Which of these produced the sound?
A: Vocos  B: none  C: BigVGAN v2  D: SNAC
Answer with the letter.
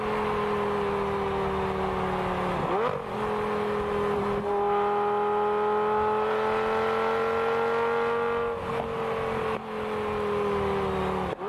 B